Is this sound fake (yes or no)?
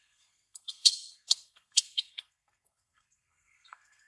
yes